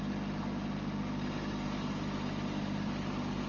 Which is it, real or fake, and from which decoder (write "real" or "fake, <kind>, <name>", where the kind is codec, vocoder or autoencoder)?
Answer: real